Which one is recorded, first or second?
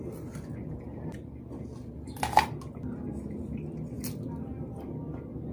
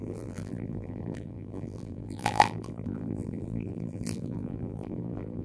first